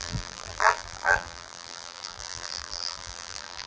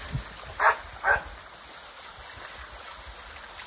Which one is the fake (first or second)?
first